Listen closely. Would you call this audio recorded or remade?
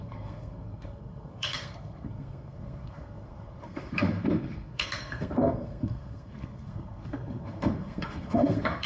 remade